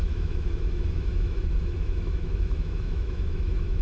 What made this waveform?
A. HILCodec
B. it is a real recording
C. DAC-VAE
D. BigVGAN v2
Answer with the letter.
C